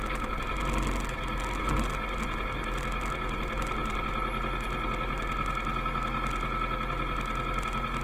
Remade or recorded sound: recorded